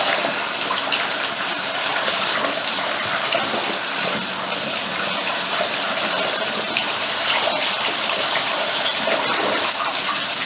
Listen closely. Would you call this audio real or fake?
fake